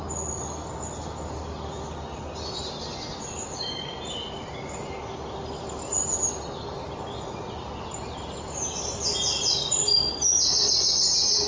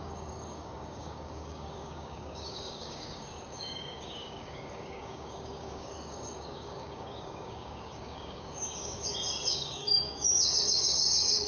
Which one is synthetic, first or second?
second